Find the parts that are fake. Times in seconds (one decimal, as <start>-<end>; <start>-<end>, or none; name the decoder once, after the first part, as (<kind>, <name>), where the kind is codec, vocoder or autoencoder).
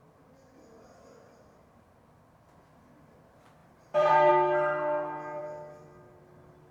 3.6-4.3 (vocoder, BigVGAN v2); 5.4-6.2